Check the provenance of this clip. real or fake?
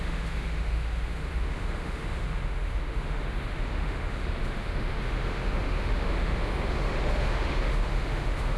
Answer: fake